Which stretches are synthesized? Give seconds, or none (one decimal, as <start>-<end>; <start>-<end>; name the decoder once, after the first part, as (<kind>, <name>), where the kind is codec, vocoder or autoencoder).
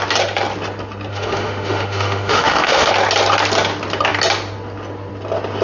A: 1.1-2.9 (autoencoder, DAC-VAE)